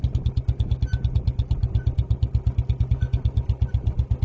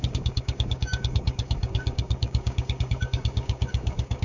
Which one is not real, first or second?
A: second